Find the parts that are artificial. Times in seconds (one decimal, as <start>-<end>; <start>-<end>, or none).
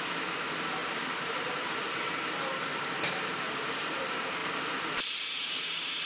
0.0-4.4; 5.0-6.1